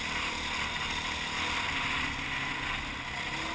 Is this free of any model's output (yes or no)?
yes